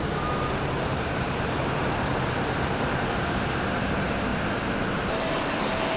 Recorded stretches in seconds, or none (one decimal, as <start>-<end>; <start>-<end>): 4.3-5.1